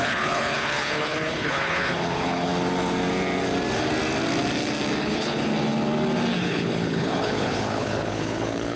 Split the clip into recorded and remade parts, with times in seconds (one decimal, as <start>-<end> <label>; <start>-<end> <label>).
0.0-2.5 remade; 2.5-5.0 recorded; 5.0-5.5 remade; 5.5-6.4 recorded; 6.4-8.8 remade